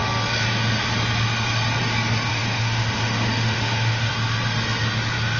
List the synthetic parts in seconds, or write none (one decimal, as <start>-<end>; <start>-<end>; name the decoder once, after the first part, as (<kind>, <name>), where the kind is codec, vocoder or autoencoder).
2.3-4.1 (autoencoder, DAC-VAE)

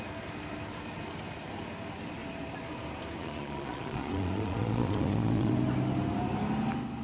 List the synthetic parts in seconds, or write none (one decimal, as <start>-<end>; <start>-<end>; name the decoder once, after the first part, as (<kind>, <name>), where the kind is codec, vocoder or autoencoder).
3.2-5.5 (vocoder, Vocos)

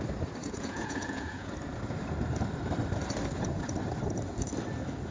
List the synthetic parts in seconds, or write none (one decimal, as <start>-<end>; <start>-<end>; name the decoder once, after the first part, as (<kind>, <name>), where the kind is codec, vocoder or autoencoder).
0.4-1.5 (vocoder, Vocos)

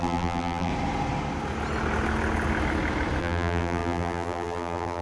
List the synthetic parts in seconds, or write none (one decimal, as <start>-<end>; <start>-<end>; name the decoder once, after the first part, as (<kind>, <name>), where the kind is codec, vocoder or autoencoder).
0.0-0.7 (vocoder, BigVGAN v2); 3.2-5.0

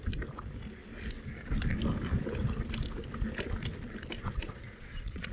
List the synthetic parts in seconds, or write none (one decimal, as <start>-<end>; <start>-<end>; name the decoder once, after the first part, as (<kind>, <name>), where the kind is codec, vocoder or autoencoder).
4.2-5.3 (vocoder, Vocos)

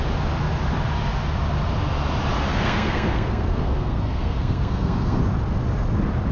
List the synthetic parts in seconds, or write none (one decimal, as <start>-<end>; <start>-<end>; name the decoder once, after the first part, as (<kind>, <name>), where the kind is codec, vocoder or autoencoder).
2.5-5.2 (codec, SNAC)

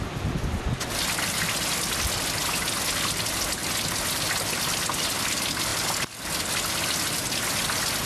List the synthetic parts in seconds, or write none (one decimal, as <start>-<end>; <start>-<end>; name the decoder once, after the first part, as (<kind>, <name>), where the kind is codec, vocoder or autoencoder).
none

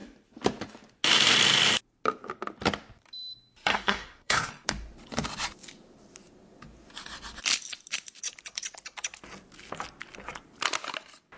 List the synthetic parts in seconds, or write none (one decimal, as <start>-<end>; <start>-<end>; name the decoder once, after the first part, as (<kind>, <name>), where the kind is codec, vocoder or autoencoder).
3.7-4.5 (codec, SNAC)